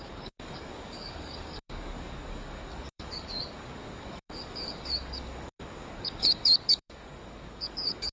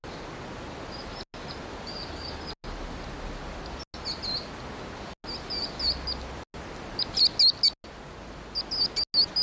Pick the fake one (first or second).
first